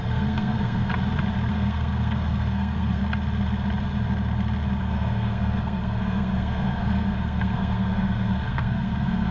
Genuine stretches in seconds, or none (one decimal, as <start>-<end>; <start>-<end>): 0.9-1.5; 3.0-4.8